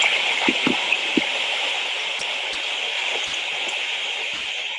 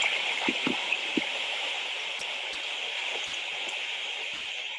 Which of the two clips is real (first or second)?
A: first